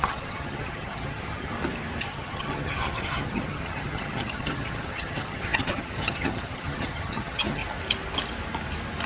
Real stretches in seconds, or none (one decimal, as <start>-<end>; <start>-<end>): 1.5-2.0; 7.6-9.1